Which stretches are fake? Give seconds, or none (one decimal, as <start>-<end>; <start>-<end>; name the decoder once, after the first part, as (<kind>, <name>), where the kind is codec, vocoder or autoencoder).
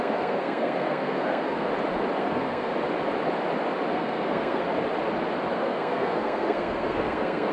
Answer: 0.0-1.7 (codec, SNAC); 2.2-2.7; 3.9-4.7; 5.5-7.5